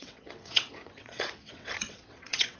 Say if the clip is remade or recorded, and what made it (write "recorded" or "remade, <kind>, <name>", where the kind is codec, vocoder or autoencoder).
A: remade, vocoder, WaveNeXt